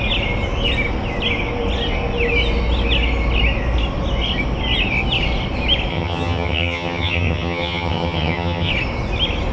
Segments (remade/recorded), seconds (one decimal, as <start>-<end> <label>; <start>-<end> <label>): 0.0-5.9 recorded; 5.9-8.7 remade; 8.7-9.5 recorded